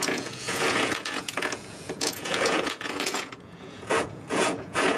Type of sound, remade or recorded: remade